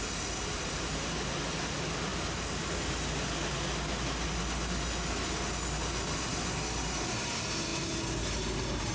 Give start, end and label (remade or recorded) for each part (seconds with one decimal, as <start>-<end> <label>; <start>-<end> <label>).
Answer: 0.0-8.9 recorded